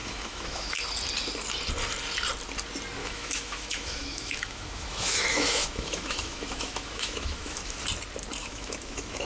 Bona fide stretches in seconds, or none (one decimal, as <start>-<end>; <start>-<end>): 0.8-3.0; 7.8-8.4